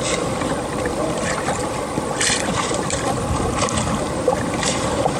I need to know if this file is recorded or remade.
remade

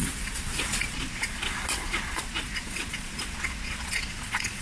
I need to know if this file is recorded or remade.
remade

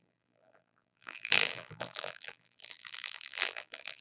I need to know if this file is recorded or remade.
remade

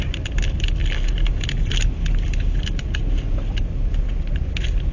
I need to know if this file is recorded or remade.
recorded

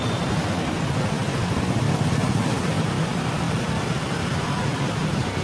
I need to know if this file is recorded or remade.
remade